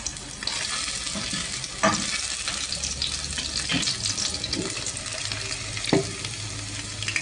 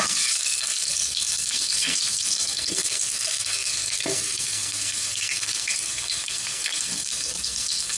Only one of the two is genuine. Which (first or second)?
first